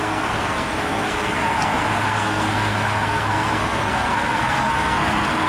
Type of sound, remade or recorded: remade